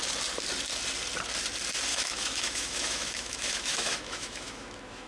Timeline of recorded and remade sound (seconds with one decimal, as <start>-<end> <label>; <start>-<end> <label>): 0.0-1.9 recorded; 1.9-5.1 remade